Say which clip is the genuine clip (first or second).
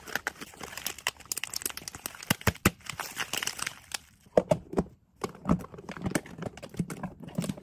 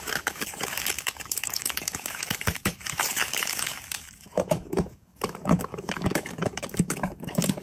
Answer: first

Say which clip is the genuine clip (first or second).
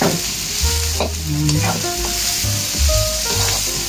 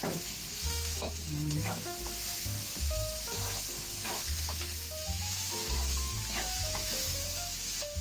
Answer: first